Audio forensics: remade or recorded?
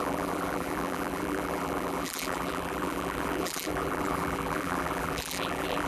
remade